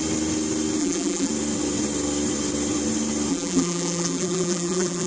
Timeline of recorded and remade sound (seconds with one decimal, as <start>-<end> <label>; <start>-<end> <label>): 0.0-0.8 recorded; 0.8-1.3 remade; 1.3-3.3 recorded; 3.3-5.1 remade